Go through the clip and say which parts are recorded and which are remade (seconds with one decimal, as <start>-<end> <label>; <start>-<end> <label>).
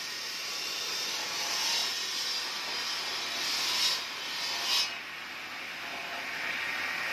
0.0-7.1 recorded